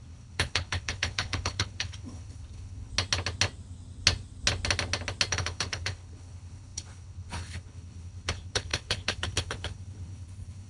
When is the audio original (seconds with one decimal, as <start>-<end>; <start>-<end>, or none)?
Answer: 2.9-5.3